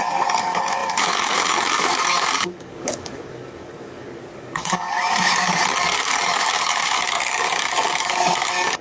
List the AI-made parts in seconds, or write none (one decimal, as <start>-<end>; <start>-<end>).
0.0-8.8